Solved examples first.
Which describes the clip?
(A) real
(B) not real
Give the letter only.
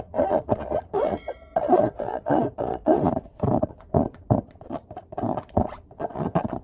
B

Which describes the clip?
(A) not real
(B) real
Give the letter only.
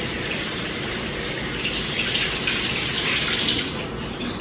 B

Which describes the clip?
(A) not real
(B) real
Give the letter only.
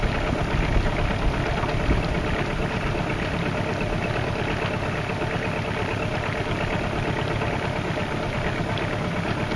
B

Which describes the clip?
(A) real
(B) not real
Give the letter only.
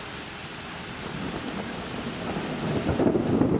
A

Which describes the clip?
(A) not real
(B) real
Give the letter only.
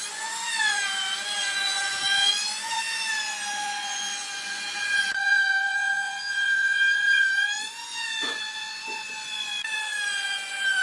A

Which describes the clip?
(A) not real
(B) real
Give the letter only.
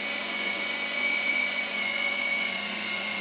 A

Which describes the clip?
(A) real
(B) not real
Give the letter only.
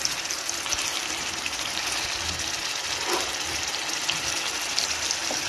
A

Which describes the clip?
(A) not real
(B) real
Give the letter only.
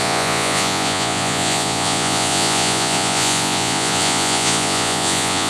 A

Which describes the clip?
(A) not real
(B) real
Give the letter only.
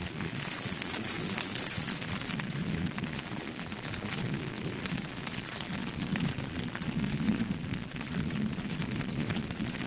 A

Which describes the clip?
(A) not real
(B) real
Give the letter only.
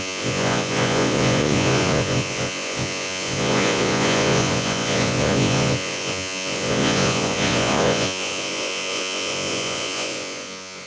A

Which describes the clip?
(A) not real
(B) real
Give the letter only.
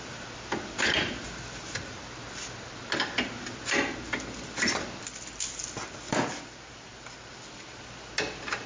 B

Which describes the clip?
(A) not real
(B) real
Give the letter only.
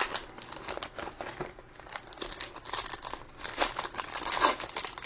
B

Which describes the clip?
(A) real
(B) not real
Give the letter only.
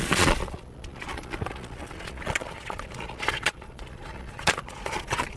B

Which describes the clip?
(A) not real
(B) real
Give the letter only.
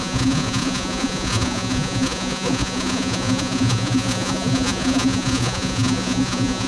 A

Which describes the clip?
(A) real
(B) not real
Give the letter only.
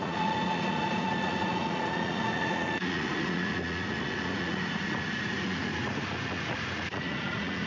B